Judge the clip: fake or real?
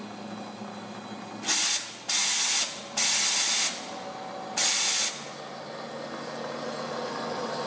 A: real